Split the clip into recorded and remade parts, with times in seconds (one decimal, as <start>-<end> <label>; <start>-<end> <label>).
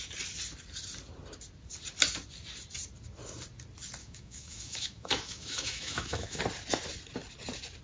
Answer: 0.0-4.0 recorded; 4.0-6.4 remade; 6.4-7.8 recorded